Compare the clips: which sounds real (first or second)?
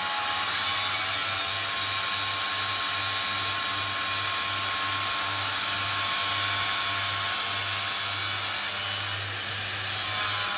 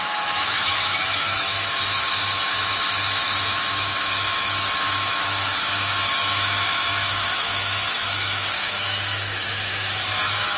first